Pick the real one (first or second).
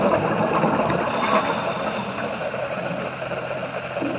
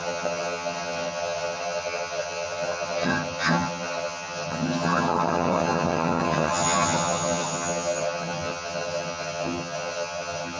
first